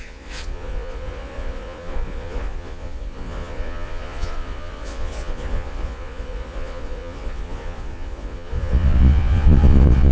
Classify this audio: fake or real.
fake